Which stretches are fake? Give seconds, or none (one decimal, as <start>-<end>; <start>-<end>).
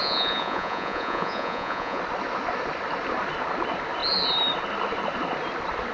0.0-2.0